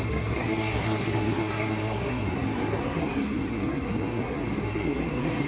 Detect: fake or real fake